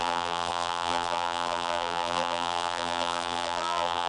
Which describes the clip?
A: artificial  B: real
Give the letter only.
A